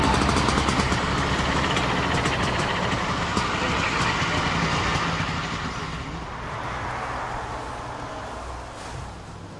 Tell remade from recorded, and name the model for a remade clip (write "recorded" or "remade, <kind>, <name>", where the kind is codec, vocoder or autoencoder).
recorded